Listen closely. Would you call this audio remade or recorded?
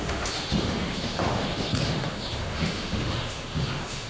remade